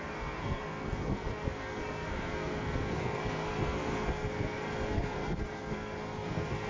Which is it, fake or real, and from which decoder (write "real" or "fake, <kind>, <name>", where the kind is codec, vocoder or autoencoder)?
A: fake, codec, SNAC